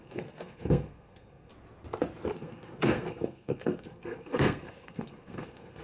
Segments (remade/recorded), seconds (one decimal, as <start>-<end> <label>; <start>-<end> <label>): 0.0-1.5 remade; 1.5-2.3 recorded; 2.3-5.8 remade